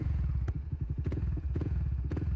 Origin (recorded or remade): remade